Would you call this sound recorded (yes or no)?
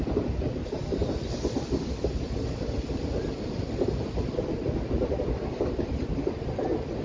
yes